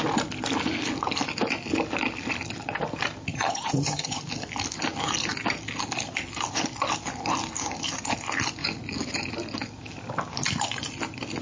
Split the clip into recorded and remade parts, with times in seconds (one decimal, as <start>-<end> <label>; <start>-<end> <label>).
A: 0.0-3.3 recorded; 3.3-4.2 remade; 4.2-11.4 recorded